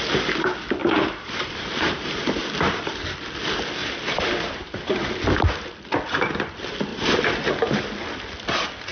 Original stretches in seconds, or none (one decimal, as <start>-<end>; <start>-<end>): 0.0-0.8; 3.0-3.8; 5.0-6.9; 7.5-8.9